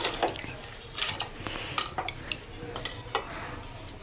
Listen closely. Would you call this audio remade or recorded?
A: recorded